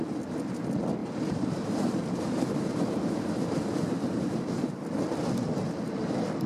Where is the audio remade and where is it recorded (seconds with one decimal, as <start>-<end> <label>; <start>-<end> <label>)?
0.0-1.0 recorded; 1.0-4.9 remade; 4.9-6.5 recorded